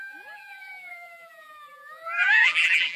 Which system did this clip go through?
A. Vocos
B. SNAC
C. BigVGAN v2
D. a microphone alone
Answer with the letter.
C